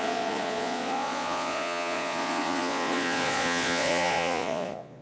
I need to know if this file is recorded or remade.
remade